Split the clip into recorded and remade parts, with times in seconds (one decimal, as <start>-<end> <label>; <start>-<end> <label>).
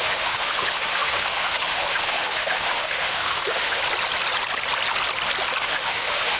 0.0-3.8 remade; 3.8-5.6 recorded; 5.6-6.4 remade